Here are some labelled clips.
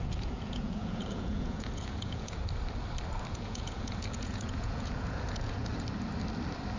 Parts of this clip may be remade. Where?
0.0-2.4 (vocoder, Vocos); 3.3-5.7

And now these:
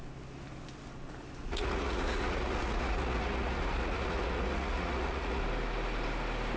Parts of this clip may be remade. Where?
1.4-5.4 (vocoder, Vocos)

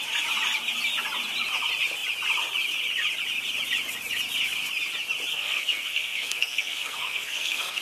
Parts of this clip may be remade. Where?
5.3-7.8 (codec, SNAC)

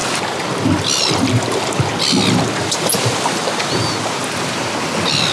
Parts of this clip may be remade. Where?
none

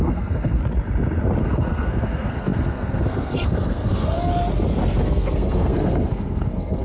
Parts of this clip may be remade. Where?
0.0-0.6 (codec, SNAC); 1.4-4.3; 5.0-6.8

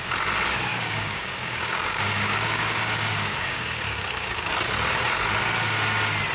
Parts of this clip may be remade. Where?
0.7-4.5 (codec, DAC)

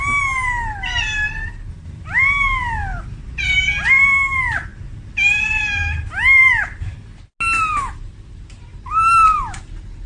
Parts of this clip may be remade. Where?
none